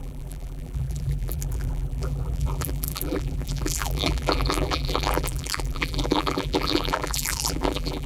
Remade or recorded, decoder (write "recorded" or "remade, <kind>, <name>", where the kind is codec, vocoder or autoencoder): remade, vocoder, BigVGAN v2